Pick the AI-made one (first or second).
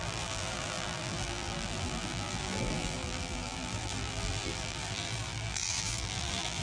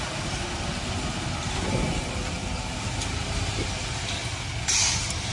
first